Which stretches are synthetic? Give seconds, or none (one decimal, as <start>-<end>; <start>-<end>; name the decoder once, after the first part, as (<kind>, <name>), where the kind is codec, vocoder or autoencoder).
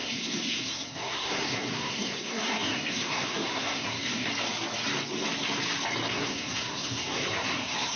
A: 0.0-4.3 (codec, SNAC); 6.1-8.0